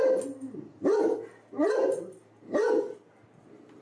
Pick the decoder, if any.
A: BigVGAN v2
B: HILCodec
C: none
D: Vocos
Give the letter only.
C